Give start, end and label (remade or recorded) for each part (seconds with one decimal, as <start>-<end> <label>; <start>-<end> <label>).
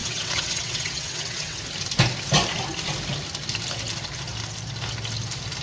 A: 0.0-1.6 remade; 1.6-5.6 recorded